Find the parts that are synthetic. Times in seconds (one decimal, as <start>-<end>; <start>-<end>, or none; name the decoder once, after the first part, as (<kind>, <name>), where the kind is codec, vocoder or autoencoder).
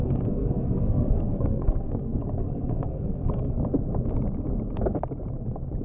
0.0-3.5 (codec, SNAC)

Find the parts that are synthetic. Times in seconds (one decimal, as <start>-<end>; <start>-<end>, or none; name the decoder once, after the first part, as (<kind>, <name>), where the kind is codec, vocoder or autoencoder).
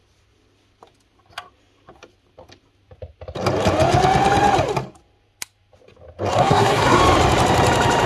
6.3-7.0 (codec, SNAC)